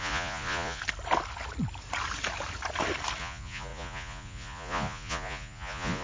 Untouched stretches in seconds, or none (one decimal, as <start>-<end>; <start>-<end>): 0.8-3.2